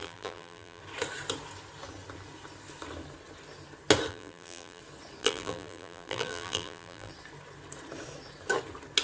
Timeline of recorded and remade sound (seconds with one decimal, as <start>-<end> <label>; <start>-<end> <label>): 0.0-0.8 remade; 0.8-4.1 recorded; 4.1-4.8 remade; 4.8-5.2 recorded; 5.2-7.1 remade; 7.1-9.0 recorded